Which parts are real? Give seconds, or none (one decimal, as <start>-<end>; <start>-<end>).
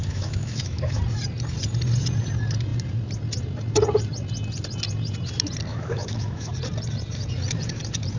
1.0-5.7; 6.5-8.2